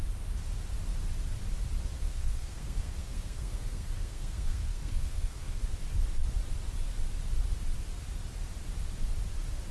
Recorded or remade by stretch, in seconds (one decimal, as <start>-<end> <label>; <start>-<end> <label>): 0.0-2.0 recorded; 2.0-5.6 remade; 5.6-9.7 recorded